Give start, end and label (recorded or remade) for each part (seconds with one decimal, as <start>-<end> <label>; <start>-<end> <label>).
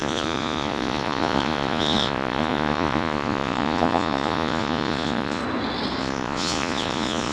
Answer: 0.0-5.4 remade; 5.4-6.0 recorded; 6.0-7.3 remade